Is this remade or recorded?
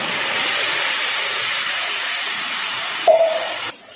remade